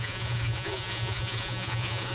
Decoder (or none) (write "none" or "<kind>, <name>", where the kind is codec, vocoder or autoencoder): vocoder, Vocos